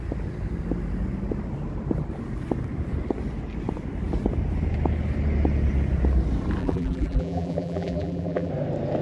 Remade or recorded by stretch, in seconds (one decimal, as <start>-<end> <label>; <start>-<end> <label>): 0.0-6.6 recorded; 6.6-8.5 remade; 8.5-9.0 recorded